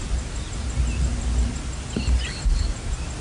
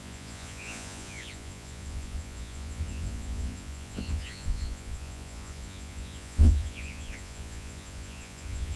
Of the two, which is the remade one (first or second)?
second